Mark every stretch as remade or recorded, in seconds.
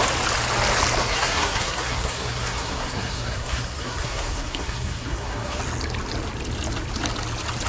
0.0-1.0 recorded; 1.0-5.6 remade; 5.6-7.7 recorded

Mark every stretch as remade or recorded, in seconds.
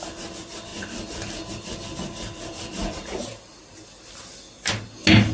0.0-5.3 recorded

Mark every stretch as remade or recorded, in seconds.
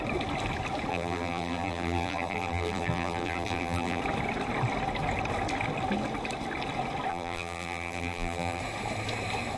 0.0-0.9 recorded; 0.9-4.0 remade; 4.0-7.1 recorded; 7.1-8.6 remade; 8.6-9.6 recorded